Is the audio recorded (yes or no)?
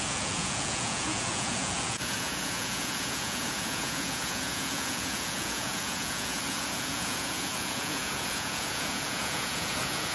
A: no